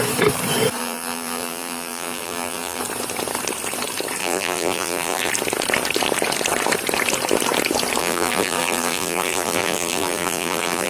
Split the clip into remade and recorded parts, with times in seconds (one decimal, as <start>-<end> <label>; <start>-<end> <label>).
0.0-0.8 recorded; 0.8-2.8 remade; 2.8-4.2 recorded; 4.2-5.3 remade; 5.3-8.0 recorded; 8.0-10.9 remade